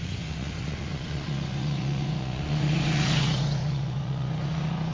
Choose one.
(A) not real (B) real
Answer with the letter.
A